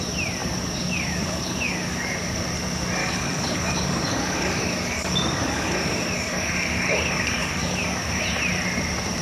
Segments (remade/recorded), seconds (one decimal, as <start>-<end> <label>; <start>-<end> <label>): 0.0-0.4 recorded; 0.4-2.5 remade; 2.5-3.0 recorded; 3.0-8.2 remade; 8.2-9.2 recorded